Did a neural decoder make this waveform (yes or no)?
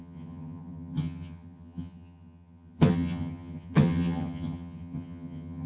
yes